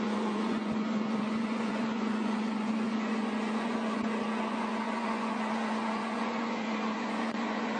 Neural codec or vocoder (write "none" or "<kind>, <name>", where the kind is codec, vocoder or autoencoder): vocoder, Vocos